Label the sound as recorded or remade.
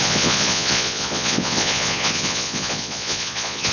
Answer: remade